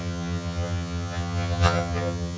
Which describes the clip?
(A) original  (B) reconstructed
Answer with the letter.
B